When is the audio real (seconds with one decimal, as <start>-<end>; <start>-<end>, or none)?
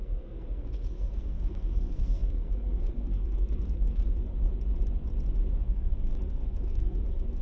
4.3-5.6